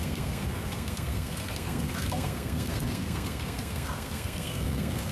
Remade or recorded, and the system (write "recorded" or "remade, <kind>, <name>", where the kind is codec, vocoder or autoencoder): remade, codec, SNAC